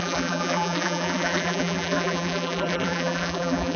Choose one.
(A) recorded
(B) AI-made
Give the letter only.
B